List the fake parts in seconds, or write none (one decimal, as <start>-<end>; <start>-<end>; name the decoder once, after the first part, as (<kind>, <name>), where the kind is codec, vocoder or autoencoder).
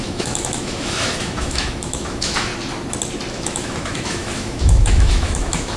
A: 0.0-2.5 (autoencoder, DAC-VAE); 3.3-5.8